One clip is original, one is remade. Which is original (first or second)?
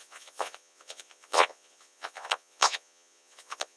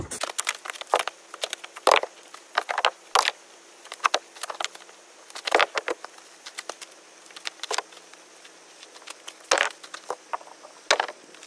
second